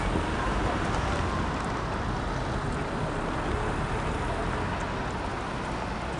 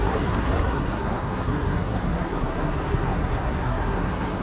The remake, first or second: second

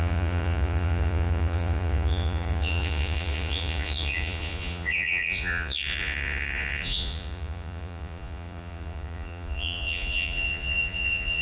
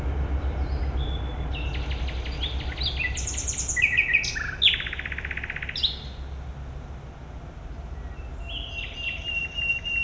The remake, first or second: first